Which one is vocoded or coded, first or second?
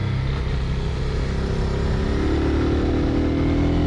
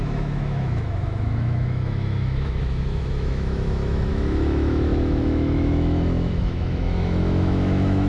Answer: second